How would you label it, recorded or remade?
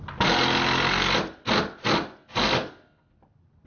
recorded